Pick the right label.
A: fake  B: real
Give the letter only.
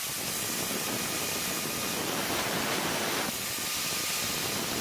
B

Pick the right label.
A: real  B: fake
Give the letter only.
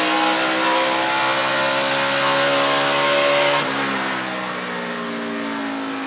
A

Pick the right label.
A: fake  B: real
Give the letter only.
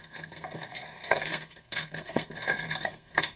A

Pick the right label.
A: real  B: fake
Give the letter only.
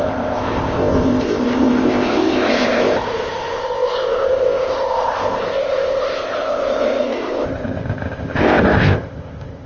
B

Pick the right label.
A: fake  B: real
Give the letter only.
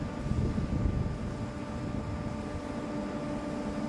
B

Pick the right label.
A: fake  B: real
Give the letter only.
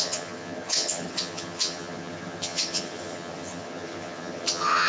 A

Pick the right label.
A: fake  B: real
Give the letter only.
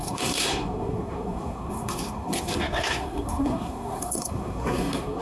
A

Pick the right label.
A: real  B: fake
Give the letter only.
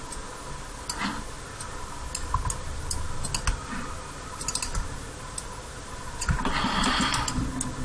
A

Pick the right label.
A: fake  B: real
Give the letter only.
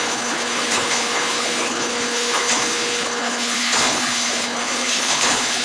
A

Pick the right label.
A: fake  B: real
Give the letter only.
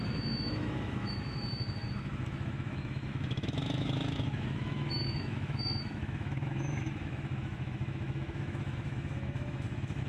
A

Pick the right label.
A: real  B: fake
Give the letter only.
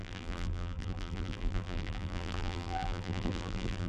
B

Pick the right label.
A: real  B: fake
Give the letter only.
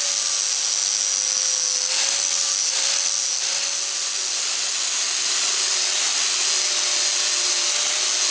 A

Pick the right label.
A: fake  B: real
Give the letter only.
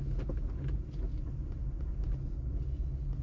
B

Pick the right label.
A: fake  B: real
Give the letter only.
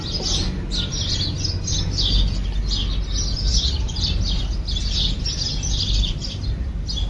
B